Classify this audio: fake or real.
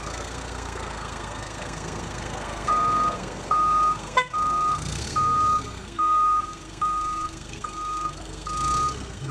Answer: fake